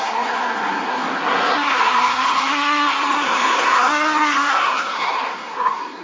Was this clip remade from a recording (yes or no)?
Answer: yes